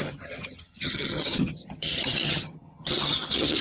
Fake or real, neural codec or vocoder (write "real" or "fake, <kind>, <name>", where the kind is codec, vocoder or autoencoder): fake, vocoder, HiFi-GAN